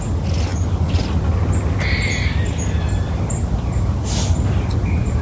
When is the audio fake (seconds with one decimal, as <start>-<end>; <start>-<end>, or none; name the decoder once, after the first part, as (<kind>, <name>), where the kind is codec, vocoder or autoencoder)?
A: none